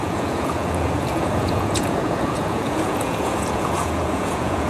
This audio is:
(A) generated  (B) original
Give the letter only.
A